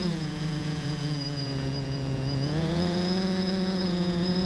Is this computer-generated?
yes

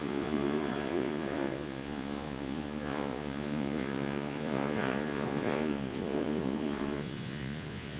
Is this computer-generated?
yes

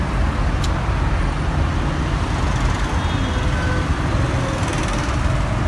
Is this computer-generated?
no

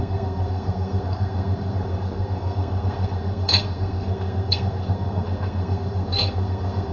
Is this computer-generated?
yes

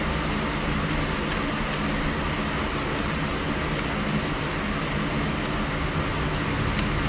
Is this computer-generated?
no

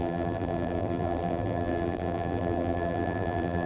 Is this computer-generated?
yes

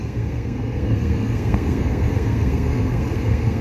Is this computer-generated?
yes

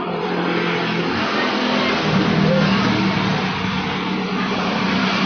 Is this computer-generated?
no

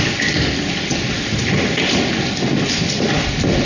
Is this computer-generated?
no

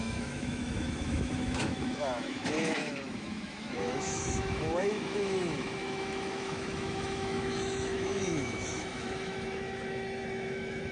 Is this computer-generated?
yes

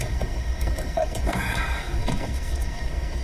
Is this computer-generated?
yes